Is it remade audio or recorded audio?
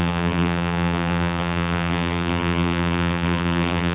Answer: remade